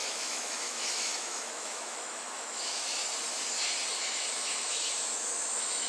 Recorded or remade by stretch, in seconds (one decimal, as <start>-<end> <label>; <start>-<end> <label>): 0.0-3.0 remade; 3.0-4.0 recorded; 4.0-5.9 remade